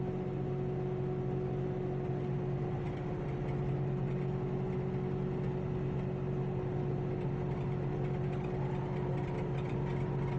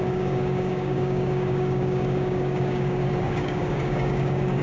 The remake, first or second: second